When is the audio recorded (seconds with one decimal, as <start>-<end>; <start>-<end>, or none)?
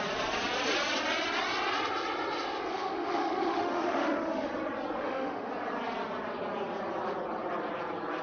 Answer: 0.0-2.7; 4.5-5.0; 5.5-8.2